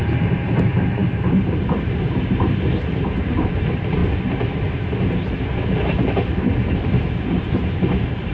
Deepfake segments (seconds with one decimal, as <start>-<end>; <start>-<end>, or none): 0.0-4.0; 6.8-8.3